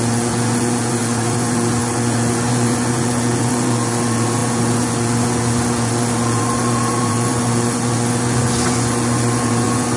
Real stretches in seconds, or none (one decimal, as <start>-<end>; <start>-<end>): none